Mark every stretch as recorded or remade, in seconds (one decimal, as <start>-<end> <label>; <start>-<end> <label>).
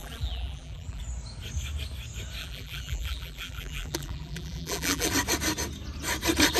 0.0-1.0 remade; 1.0-2.4 recorded; 2.4-5.1 remade; 5.1-6.6 recorded